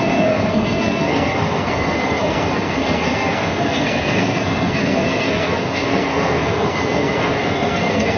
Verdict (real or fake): fake